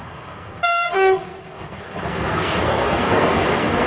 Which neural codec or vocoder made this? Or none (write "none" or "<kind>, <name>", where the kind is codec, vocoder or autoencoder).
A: codec, SNAC